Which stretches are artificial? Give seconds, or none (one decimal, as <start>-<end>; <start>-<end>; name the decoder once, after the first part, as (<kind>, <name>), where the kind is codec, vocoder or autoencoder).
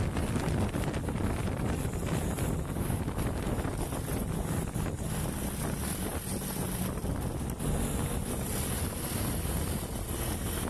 none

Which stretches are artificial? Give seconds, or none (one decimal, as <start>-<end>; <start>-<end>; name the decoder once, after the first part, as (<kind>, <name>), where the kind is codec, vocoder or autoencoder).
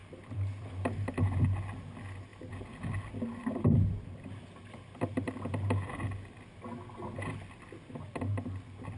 0.0-0.7 (vocoder, BigVGAN v2)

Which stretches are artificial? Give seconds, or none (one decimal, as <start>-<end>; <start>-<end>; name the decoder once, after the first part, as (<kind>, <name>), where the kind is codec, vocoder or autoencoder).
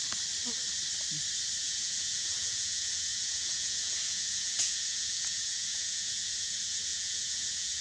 1.6-7.8 (vocoder, Vocos)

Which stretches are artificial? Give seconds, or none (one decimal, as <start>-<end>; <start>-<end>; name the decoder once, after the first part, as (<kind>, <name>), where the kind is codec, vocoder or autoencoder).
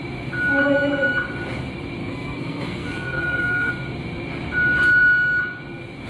2.0-3.7 (codec, SNAC)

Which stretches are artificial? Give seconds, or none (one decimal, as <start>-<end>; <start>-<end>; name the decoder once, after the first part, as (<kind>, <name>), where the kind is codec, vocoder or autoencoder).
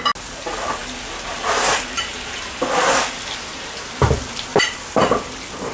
4.5-5.7 (vocoder, BigVGAN v2)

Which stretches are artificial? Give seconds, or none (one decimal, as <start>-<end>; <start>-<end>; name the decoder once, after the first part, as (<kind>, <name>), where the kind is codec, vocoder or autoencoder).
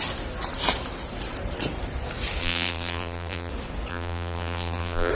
2.4-3.5 (vocoder, BigVGAN v2); 3.9-5.1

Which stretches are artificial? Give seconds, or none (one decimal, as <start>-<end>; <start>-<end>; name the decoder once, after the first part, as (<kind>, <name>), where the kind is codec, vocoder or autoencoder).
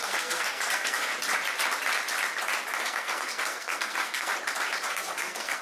0.0-1.1 (codec, SNAC); 2.8-4.3; 4.9-5.6